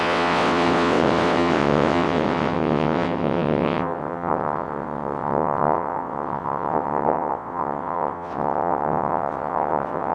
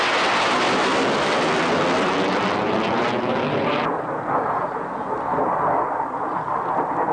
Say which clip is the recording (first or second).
second